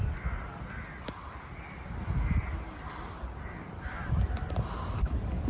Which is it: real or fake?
real